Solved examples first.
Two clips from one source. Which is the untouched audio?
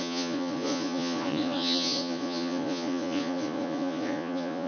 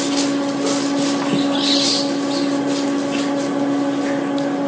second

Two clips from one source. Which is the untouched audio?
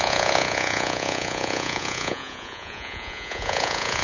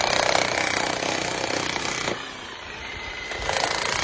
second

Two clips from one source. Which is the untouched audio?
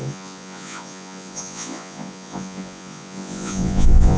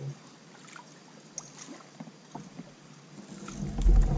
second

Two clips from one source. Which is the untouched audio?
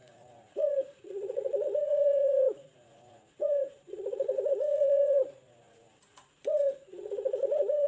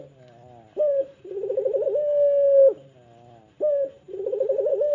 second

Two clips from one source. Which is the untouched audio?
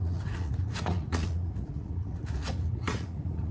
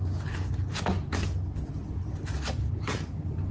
second